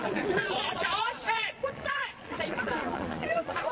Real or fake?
fake